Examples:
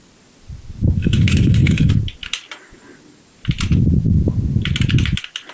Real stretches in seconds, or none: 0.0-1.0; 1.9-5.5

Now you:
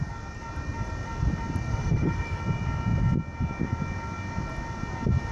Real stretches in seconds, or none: 0.0-1.7; 2.4-5.3

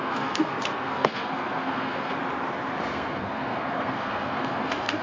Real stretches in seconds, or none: 2.2-2.8

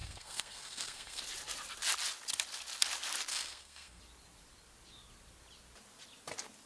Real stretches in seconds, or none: 1.2-3.3; 4.0-6.7

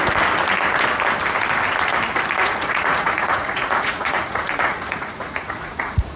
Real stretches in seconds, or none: 0.0-2.4